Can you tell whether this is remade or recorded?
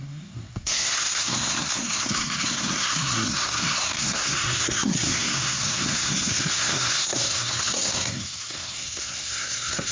remade